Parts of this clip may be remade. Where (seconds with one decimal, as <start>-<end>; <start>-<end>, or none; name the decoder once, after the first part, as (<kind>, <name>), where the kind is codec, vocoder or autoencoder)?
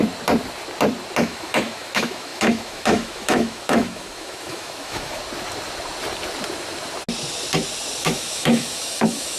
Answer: 1.2-5.2 (autoencoder, DAC-VAE); 8.0-9.4